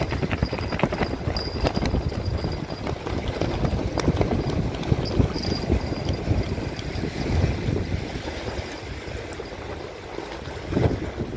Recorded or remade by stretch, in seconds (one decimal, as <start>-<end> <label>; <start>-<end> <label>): 0.0-11.4 recorded